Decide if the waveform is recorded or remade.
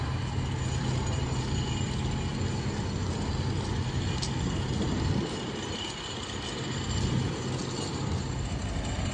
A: recorded